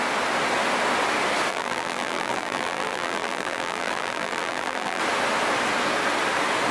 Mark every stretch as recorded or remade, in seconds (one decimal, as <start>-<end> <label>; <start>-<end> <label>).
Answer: 0.0-1.5 recorded; 1.5-5.0 remade; 5.0-6.7 recorded